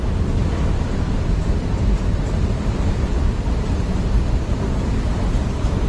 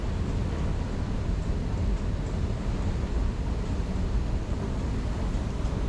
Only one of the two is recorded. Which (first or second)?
second